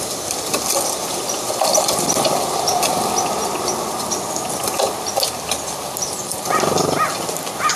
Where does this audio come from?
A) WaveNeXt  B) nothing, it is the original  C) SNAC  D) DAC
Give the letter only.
B